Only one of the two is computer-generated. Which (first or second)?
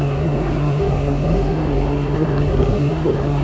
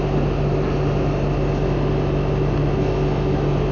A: first